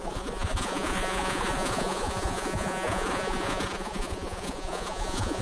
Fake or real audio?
fake